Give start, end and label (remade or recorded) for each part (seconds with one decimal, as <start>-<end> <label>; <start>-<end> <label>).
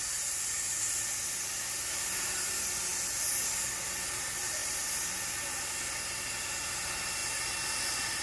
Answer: 0.0-4.6 recorded; 4.6-5.2 remade; 5.2-8.2 recorded